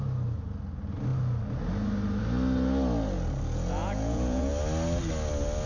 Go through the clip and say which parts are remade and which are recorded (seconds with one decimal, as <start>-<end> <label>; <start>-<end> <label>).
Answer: 0.0-3.8 recorded; 3.8-4.5 remade; 4.5-5.7 recorded